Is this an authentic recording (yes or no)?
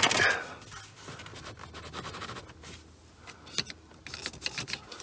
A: yes